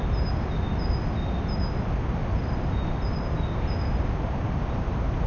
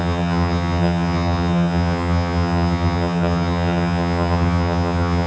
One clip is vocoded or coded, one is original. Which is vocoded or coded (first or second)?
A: second